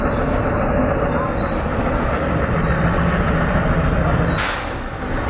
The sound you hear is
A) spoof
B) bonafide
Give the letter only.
A